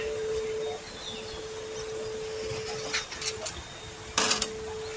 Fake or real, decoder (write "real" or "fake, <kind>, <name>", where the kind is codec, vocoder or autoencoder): real